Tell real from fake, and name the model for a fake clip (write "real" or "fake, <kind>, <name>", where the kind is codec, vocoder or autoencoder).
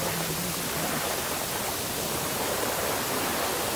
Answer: real